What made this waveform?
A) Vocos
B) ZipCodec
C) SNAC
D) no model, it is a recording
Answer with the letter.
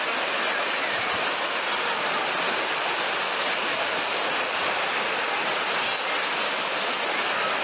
D